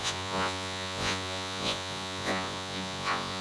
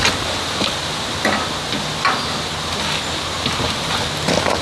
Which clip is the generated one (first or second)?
first